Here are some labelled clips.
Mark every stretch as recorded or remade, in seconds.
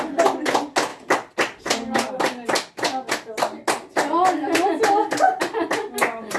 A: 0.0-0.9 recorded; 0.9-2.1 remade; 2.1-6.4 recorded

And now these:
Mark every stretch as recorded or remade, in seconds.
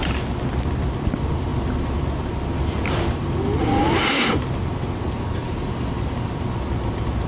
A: 0.0-5.4 recorded; 5.4-6.3 remade; 6.3-7.3 recorded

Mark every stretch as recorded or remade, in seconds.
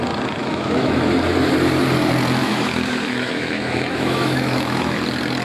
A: 0.0-0.4 recorded; 0.4-1.1 remade; 1.1-2.4 recorded; 2.4-5.0 remade; 5.0-5.4 recorded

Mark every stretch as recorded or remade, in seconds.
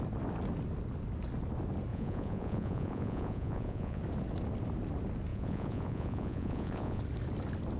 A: 0.0-1.9 recorded; 1.9-4.0 remade; 4.0-5.3 recorded; 5.3-7.0 remade; 7.0-7.8 recorded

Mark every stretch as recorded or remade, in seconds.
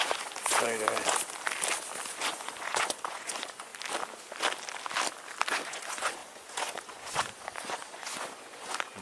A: 0.0-0.9 remade; 0.9-2.1 recorded; 2.1-3.7 remade; 3.7-5.5 recorded; 5.5-9.0 remade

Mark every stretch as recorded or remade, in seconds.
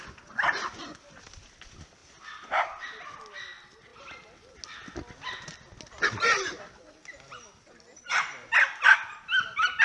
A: 0.0-9.8 recorded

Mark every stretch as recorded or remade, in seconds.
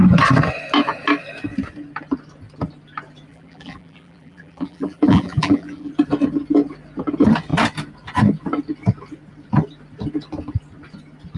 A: 0.0-3.3 recorded; 3.3-5.9 remade; 5.9-11.4 recorded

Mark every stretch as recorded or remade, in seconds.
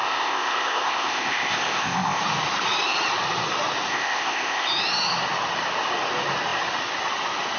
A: 0.0-2.2 remade; 2.2-3.9 recorded; 3.9-4.7 remade; 4.7-7.6 recorded